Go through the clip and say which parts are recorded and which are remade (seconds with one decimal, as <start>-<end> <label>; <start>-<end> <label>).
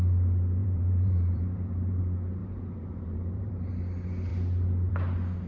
0.0-0.6 recorded; 0.6-2.0 remade; 2.0-2.4 recorded; 2.4-3.7 remade; 3.7-5.5 recorded